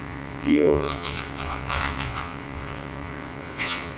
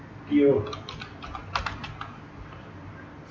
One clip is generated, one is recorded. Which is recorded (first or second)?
second